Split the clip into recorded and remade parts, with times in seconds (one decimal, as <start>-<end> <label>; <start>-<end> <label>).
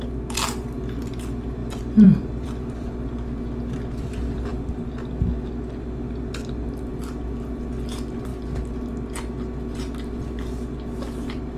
0.0-1.6 recorded; 1.6-2.9 remade; 2.9-11.6 recorded